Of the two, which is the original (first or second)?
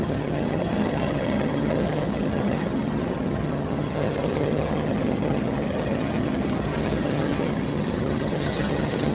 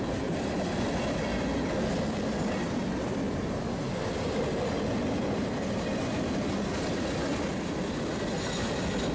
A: second